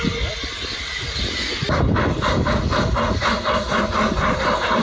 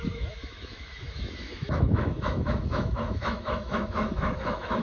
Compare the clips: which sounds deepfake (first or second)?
second